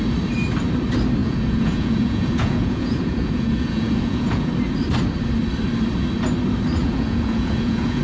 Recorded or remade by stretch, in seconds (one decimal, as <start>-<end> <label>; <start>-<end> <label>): 0.0-1.2 recorded; 1.2-4.5 remade; 4.5-6.8 recorded; 6.8-8.0 remade